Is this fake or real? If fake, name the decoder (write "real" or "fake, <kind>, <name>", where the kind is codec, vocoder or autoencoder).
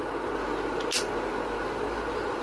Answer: real